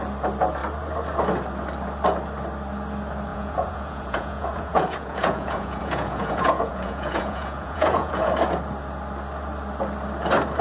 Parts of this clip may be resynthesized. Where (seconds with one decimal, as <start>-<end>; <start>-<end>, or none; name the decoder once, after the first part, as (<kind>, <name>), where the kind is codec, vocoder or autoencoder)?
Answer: 3.3-8.3 (vocoder, Vocos)